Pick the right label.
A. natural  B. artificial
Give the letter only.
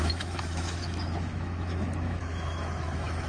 B